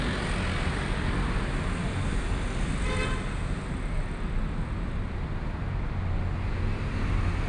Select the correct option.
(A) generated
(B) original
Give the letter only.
B